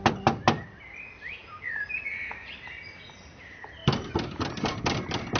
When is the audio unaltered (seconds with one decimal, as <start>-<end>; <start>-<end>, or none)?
0.0-5.4